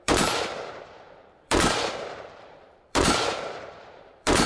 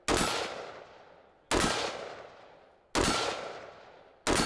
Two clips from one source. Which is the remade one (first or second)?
first